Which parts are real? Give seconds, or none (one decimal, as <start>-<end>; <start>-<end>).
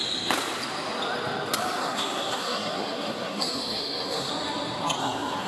0.0-1.8; 4.3-5.0